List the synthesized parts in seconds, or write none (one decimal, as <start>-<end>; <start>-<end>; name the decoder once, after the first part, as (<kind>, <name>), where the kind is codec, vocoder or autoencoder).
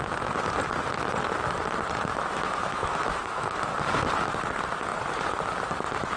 2.1-4.0 (autoencoder, DAC-VAE)